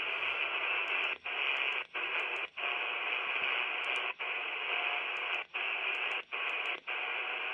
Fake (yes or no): no